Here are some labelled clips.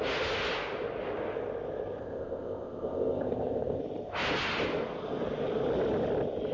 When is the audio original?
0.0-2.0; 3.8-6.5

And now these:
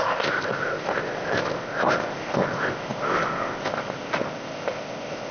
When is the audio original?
none